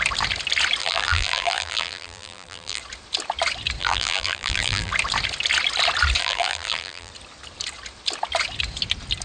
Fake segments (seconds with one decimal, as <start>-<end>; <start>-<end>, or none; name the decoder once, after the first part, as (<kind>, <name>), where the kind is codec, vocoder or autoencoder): 0.8-2.8 (vocoder, BigVGAN v2); 3.8-4.9; 6.2-7.1